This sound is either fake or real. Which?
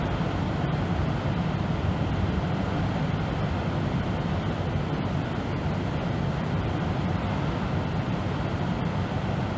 real